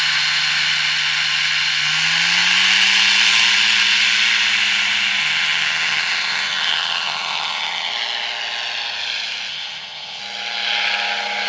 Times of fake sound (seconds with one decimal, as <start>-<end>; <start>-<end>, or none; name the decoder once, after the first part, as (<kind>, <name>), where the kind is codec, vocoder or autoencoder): 5.2-7.9 (vocoder, HiFi-GAN); 9.5-10.2

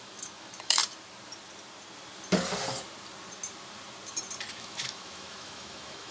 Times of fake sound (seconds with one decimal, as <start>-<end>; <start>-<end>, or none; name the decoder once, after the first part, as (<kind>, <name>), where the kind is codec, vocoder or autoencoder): 0.0-0.8 (autoencoder, DAC-VAE); 4.5-6.1

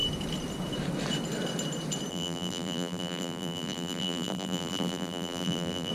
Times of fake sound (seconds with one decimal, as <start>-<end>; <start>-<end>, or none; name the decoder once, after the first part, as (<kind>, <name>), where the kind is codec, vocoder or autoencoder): 2.1-5.9 (vocoder, BigVGAN v2)